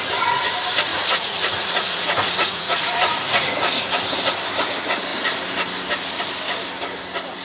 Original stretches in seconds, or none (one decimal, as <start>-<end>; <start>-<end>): 0.0-0.9; 3.6-7.4